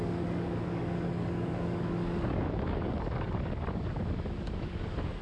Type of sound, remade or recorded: remade